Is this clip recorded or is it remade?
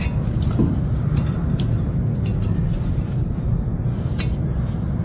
recorded